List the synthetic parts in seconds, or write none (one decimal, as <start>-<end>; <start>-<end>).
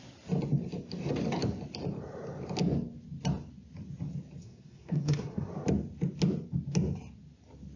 4.4-5.5